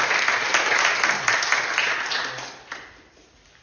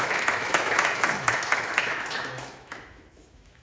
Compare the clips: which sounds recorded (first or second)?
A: first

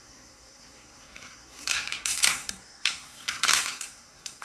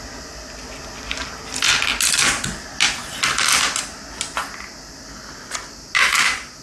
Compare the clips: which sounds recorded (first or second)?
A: second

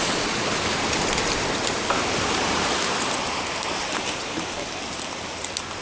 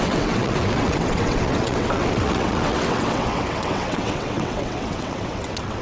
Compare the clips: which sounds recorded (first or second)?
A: first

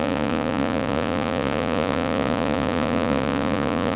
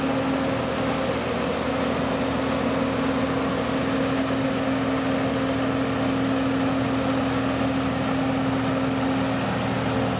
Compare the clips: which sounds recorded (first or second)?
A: second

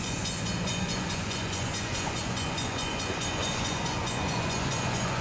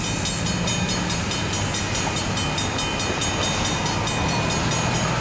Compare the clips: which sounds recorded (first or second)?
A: second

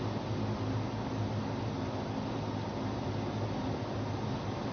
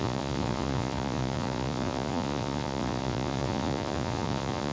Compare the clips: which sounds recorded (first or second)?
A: first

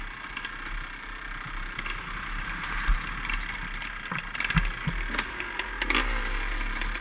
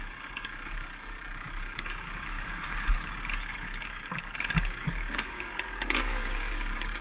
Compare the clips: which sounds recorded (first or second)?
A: first